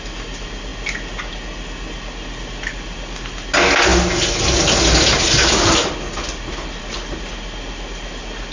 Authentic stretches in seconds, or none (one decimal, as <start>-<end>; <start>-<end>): 0.0-8.5